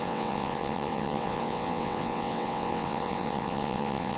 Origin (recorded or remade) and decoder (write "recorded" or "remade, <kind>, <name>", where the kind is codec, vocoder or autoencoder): remade, vocoder, WaveNeXt